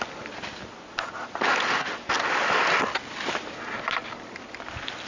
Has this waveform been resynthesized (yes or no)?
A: no